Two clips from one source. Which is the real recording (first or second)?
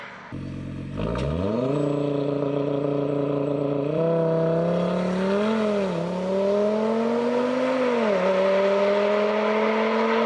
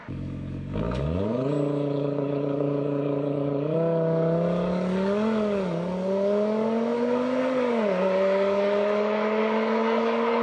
first